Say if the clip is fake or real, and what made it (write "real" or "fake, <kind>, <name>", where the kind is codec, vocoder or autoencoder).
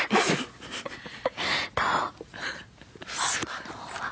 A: real